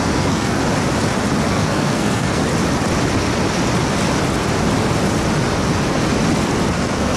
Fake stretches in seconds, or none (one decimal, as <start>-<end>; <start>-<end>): 0.0-0.6; 1.5-2.4; 6.7-7.2